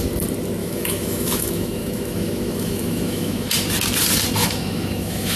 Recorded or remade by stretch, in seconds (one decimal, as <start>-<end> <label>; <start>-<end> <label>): 0.0-0.6 recorded; 0.6-3.5 remade; 3.5-4.4 recorded; 4.4-5.4 remade